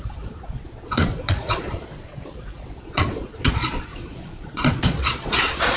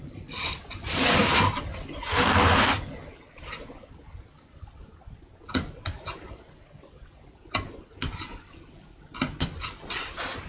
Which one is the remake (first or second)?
first